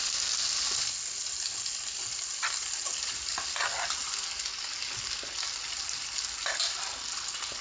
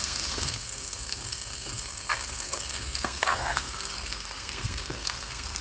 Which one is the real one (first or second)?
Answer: first